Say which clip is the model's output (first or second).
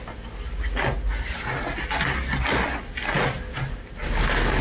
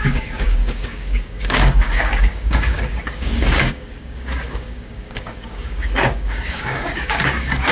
second